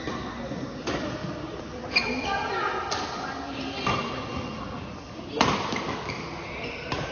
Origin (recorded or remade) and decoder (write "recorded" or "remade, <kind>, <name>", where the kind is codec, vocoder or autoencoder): recorded